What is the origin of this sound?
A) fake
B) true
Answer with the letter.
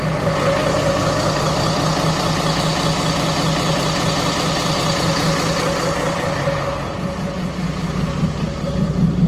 B